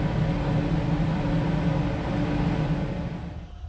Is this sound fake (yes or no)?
no